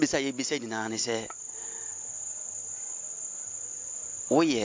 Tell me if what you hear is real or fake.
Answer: real